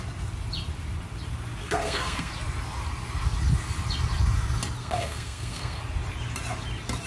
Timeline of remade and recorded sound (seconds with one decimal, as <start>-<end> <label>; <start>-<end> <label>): 0.0-1.6 recorded; 1.6-2.3 remade; 2.3-4.8 recorded; 4.8-5.8 remade; 5.8-7.1 recorded